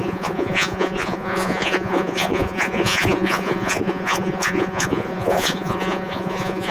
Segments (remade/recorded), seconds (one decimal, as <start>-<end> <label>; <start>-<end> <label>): 0.0-6.7 remade